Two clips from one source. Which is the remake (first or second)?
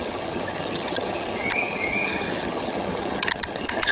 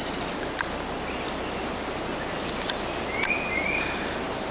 first